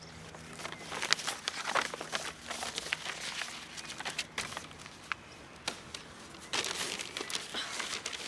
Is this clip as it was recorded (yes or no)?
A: yes